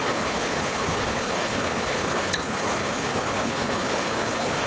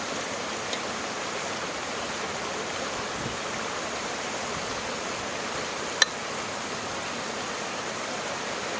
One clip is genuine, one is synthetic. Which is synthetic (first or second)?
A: first